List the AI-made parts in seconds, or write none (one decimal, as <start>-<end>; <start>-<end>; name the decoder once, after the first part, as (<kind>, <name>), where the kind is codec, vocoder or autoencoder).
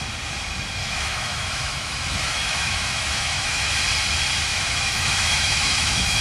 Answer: 0.8-3.7 (autoencoder, DAC-VAE); 4.5-6.2